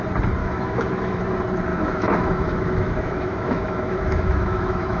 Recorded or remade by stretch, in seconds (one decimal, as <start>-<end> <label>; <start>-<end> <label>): 0.0-0.4 recorded; 0.4-1.2 remade; 1.2-1.7 recorded; 1.7-5.0 remade